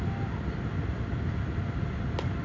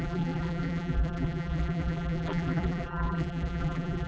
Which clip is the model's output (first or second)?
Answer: second